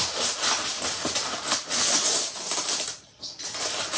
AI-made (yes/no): no